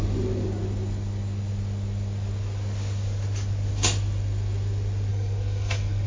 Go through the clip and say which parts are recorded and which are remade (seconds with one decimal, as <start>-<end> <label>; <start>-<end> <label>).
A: 0.0-5.1 recorded; 5.1-6.1 remade